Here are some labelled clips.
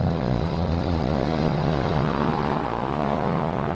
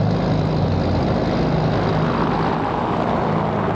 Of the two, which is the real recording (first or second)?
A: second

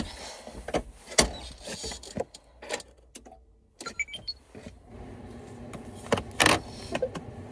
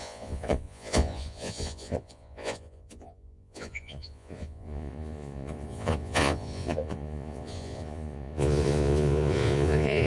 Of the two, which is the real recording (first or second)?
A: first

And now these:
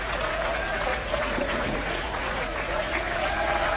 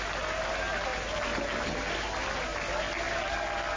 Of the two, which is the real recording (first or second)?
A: second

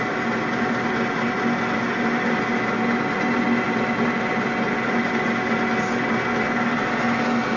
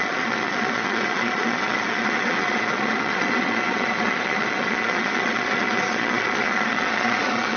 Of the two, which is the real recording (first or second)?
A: first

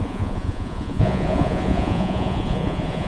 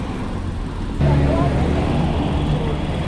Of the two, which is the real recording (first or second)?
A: second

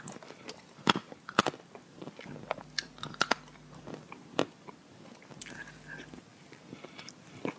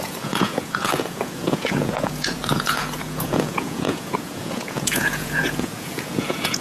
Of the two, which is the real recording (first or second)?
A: first